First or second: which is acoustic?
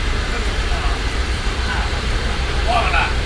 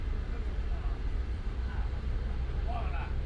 second